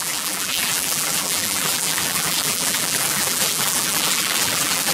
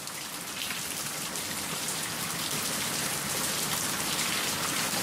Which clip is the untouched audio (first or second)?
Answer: second